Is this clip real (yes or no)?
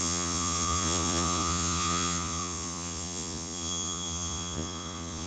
no